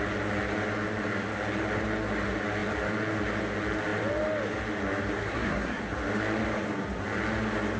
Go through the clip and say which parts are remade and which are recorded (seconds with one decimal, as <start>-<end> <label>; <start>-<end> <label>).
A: 0.0-5.2 recorded; 5.2-5.8 remade; 5.8-7.8 recorded